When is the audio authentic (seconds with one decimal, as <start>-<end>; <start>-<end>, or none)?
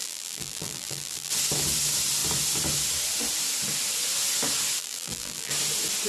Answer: 1.3-4.8; 5.5-6.1